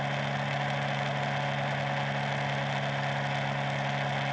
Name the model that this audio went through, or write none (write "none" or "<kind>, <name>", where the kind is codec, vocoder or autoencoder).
none